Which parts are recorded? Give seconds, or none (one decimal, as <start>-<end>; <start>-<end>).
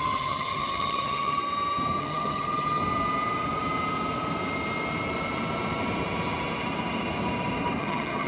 1.4-2.0; 2.8-7.8